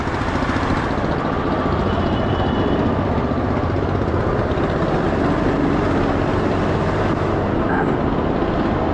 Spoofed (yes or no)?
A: no